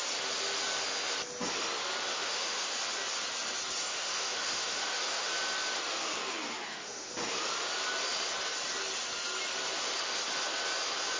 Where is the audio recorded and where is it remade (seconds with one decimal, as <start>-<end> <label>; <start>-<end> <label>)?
0.0-2.1 recorded; 2.1-2.7 remade; 2.7-3.9 recorded; 3.9-5.3 remade; 5.3-6.6 recorded; 6.6-7.1 remade; 7.1-11.2 recorded